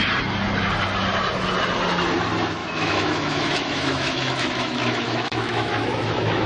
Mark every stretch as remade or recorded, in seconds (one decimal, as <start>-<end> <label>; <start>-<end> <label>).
0.0-2.6 recorded; 2.6-6.5 remade